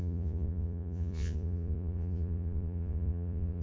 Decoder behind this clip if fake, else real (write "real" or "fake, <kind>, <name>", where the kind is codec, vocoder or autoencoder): fake, vocoder, Vocos